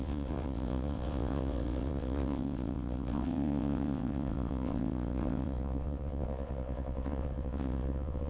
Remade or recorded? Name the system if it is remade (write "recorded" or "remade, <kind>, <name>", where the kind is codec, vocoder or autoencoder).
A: remade, vocoder, WaveNeXt